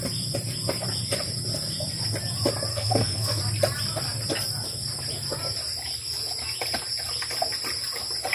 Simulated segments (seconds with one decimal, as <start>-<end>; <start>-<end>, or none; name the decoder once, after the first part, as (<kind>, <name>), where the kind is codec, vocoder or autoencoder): 2.7-3.4 (codec, SNAC)